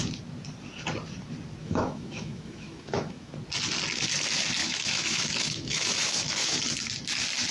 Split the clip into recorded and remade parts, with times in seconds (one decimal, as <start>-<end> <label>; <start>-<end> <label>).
0.0-1.6 recorded; 1.6-3.3 remade; 3.3-4.6 recorded; 4.6-6.6 remade; 6.6-7.5 recorded